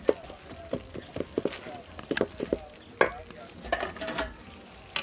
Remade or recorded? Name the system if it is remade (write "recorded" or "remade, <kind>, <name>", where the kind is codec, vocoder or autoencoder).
recorded